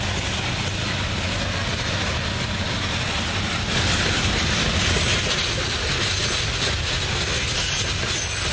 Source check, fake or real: real